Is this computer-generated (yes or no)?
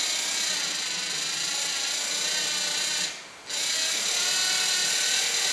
no